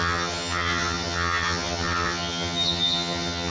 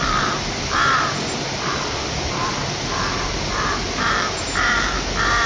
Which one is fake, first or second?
first